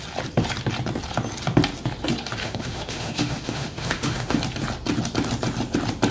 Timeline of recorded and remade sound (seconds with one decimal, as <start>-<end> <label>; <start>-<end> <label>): 0.0-2.4 recorded; 2.4-4.4 remade; 4.4-6.1 recorded